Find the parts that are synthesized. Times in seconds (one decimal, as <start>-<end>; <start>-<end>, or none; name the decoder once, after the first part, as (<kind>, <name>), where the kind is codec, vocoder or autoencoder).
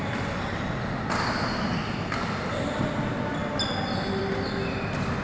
none